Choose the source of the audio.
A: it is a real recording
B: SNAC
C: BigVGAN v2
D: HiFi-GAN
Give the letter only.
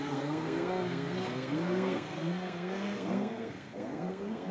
B